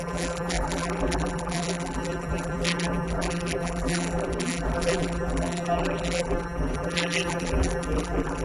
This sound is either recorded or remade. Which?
remade